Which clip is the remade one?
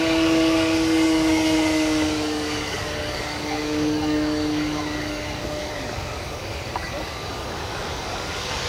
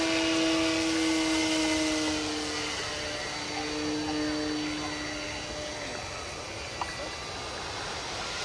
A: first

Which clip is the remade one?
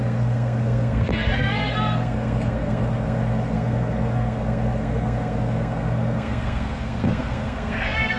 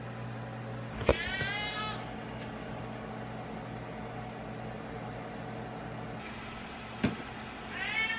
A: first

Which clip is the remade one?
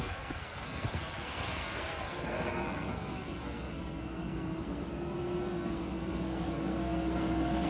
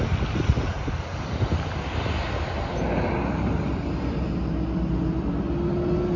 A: first